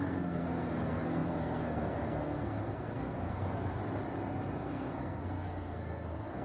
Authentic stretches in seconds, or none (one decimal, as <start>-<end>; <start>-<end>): 3.8-4.6

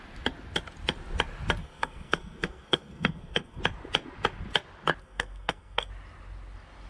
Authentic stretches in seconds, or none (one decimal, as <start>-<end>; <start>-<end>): 0.0-1.6; 3.6-5.0; 5.9-6.9

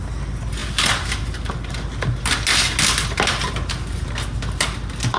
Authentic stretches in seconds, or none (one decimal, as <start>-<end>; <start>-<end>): 0.0-5.2

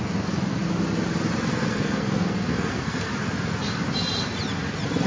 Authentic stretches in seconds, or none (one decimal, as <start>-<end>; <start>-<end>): 0.0-1.5; 3.1-5.1

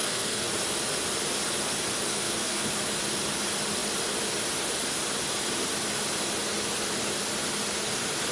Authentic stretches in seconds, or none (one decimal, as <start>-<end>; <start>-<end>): 0.5-2.1; 2.7-8.3